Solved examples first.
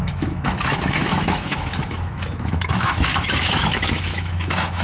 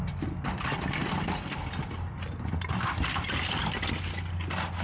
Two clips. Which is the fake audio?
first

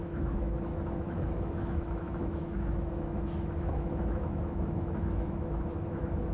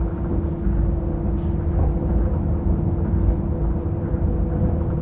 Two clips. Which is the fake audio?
first